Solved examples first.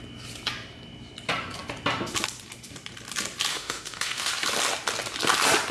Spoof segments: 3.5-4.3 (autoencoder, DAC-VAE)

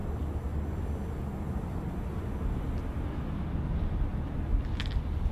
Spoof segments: none

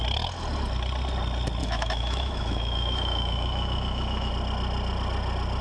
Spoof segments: 1.6-4.3 (autoencoder, DAC-VAE)